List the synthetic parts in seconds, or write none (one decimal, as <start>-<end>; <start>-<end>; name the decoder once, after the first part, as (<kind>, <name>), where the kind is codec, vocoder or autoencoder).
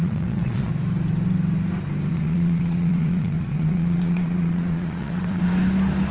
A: 0.0-0.7 (vocoder, Vocos); 2.1-5.4